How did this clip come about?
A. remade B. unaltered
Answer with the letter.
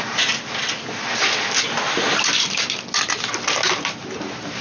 B